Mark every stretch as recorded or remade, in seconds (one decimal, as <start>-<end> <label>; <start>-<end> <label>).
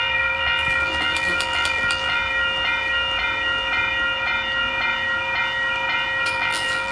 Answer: 0.0-2.2 remade; 2.2-6.3 recorded; 6.3-6.9 remade